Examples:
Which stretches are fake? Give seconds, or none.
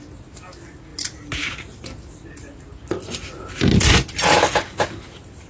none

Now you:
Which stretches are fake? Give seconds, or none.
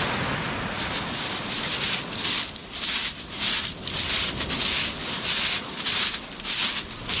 none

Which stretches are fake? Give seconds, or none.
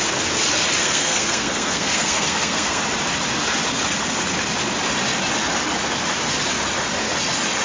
0.8-2.8 (codec, SNAC)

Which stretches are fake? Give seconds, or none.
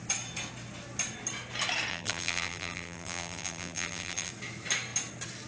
1.9-4.3 (vocoder, BigVGAN v2)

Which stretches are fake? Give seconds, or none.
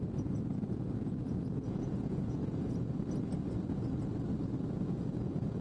0.0-2.4 (vocoder, Vocos); 4.7-5.6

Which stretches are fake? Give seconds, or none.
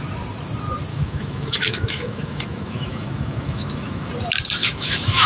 0.9-4.1 (autoencoder, DAC-VAE); 4.6-5.3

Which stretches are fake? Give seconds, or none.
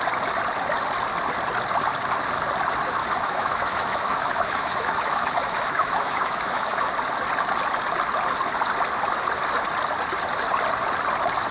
3.0-6.9 (autoencoder, DAC-VAE)